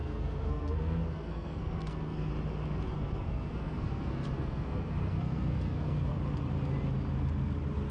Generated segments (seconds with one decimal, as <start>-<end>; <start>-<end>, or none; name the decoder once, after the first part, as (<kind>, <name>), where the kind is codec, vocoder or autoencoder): 0.0-2.3 (codec, SNAC); 2.9-6.1